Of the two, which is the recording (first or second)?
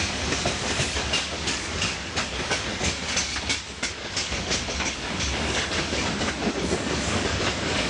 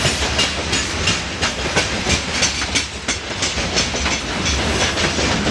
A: second